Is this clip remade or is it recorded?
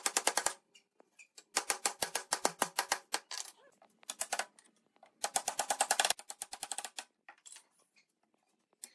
recorded